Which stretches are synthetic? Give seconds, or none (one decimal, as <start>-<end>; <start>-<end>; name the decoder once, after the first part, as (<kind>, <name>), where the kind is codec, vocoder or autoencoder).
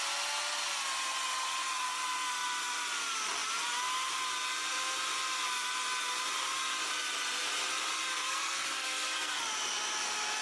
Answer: 8.1-9.4 (codec, SNAC)